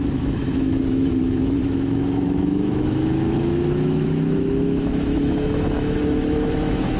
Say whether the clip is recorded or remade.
remade